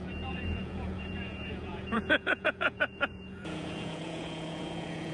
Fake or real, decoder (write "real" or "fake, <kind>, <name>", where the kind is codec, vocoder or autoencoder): fake, vocoder, Vocos